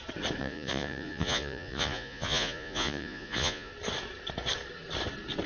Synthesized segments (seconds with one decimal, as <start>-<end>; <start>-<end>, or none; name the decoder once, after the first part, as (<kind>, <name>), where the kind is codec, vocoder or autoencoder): 0.4-3.7 (vocoder, Vocos)